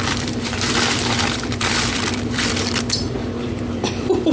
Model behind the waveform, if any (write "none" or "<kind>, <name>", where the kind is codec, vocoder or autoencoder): vocoder, BigVGAN v2